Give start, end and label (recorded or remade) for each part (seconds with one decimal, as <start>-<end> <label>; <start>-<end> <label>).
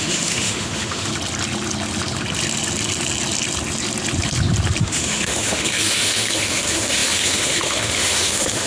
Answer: 0.0-1.1 remade; 1.1-4.8 recorded; 4.8-8.7 remade